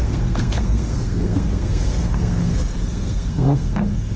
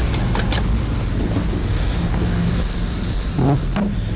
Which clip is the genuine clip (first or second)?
second